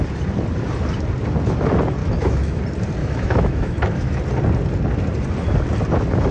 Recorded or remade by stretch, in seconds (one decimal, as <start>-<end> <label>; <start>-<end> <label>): 0.0-2.0 recorded; 2.0-2.6 remade; 2.6-3.0 recorded; 3.0-4.2 remade; 4.2-6.3 recorded